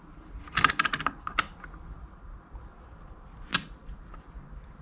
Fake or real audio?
real